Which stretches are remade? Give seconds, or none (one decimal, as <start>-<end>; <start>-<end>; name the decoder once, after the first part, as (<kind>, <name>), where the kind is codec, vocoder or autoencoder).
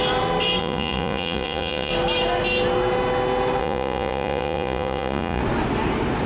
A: 0.6-1.9 (vocoder, Vocos); 3.6-5.4